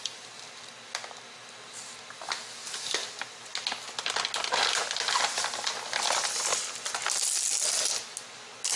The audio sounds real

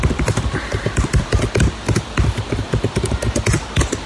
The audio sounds real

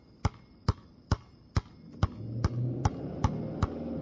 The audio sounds real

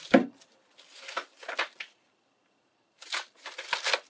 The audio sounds real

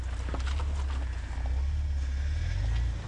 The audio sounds real